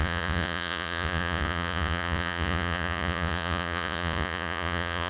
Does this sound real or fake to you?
fake